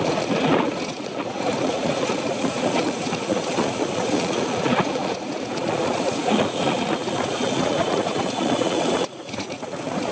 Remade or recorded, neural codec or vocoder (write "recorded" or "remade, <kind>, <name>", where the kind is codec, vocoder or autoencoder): remade, vocoder, Vocos